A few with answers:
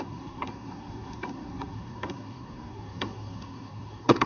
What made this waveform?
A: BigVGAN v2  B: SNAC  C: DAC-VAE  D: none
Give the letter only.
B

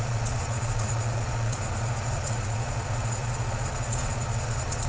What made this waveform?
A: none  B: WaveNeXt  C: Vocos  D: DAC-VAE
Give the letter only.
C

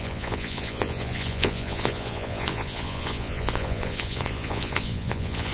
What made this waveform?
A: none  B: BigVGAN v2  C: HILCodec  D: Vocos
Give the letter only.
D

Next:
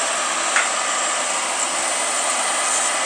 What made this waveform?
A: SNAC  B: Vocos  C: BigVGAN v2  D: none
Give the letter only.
D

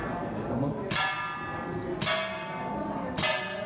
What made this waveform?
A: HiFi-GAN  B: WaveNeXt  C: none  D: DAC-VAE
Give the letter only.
C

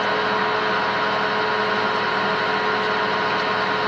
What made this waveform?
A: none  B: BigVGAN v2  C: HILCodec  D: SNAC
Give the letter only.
A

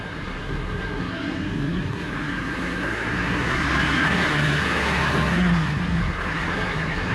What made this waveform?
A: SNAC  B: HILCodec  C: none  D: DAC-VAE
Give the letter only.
A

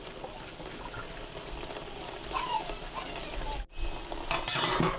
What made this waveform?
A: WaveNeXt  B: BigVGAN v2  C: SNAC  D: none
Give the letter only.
D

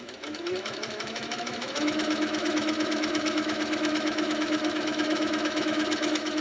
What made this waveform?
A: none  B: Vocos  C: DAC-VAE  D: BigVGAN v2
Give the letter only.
C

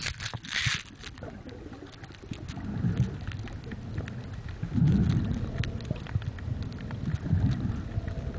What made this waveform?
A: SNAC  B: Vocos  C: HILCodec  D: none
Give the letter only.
D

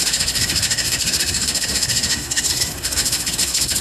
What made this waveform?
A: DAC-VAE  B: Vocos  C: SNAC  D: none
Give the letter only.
C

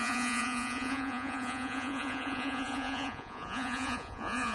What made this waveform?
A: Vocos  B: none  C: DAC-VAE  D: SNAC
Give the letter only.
A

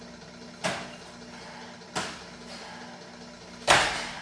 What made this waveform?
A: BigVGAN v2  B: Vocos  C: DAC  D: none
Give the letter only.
D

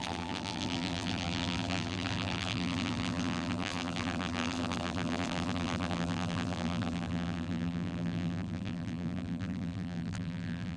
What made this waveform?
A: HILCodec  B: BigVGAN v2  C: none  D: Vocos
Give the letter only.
B